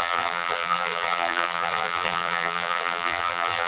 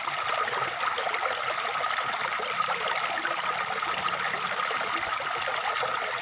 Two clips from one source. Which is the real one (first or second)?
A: second